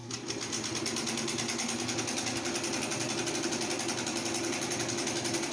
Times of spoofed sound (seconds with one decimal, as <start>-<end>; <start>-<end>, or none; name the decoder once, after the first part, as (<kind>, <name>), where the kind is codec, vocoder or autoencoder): none

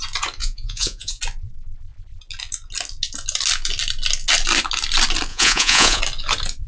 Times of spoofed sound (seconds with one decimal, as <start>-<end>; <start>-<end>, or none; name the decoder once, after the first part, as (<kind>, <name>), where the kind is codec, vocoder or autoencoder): 0.4-1.2 (vocoder, Vocos); 5.3-6.0

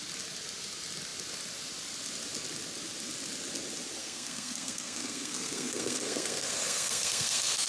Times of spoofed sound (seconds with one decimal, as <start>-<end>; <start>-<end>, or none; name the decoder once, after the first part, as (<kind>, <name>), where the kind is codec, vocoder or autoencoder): 4.0-7.7 (codec, SNAC)

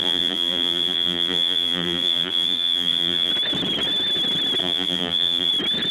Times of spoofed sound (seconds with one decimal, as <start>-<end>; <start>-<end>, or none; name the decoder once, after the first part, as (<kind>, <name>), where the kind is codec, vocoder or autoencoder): 0.0-3.3 (vocoder, BigVGAN v2); 4.6-5.5

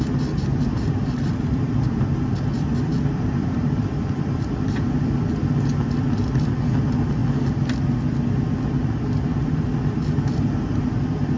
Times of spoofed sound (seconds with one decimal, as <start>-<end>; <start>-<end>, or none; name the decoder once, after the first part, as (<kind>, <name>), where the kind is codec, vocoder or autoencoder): 0.5-5.0 (vocoder, BigVGAN v2)

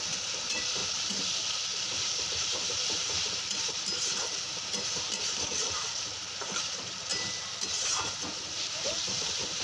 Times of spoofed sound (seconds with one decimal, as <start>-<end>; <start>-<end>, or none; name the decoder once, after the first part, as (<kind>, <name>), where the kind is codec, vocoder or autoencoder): 0.0-9.6 (vocoder, BigVGAN v2)